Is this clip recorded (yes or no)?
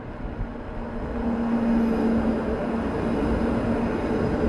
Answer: yes